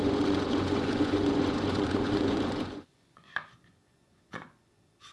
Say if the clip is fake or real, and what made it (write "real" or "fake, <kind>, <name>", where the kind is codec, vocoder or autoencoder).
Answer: fake, vocoder, Vocos